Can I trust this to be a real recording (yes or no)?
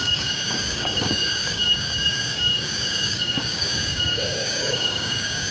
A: no